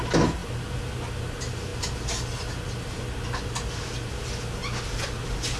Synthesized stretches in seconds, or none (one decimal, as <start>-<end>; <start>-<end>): none